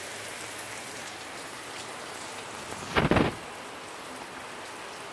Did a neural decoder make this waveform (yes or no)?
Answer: no